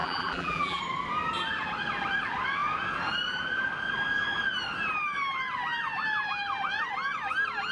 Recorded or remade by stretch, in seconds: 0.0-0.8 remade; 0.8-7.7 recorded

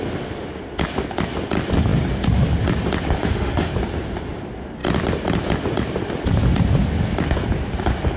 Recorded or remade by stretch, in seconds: 0.0-3.2 recorded; 3.2-3.7 remade; 3.7-8.2 recorded

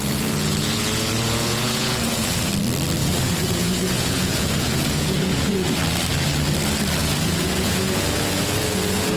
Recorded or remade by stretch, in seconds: 0.0-2.5 remade; 2.5-3.0 recorded; 3.0-5.8 remade; 5.8-7.0 recorded; 7.0-9.2 remade

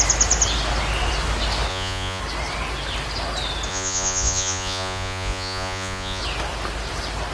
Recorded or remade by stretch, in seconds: 0.0-1.7 recorded; 1.7-2.2 remade; 2.2-3.7 recorded; 3.7-6.2 remade; 6.2-7.3 recorded

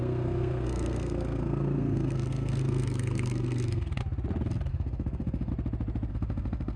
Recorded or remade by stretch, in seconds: 0.0-4.0 remade; 4.0-4.7 recorded; 4.7-5.5 remade; 5.5-6.1 recorded; 6.1-6.8 remade

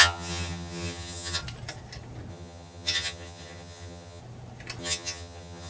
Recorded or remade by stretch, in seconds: 0.0-1.4 remade; 1.4-2.3 recorded; 2.3-4.2 remade; 4.2-4.8 recorded; 4.8-5.7 remade